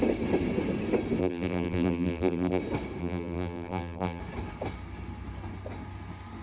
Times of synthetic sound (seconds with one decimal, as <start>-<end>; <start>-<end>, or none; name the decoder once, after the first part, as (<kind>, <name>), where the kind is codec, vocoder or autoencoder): 1.2-2.6 (vocoder, BigVGAN v2); 3.0-4.2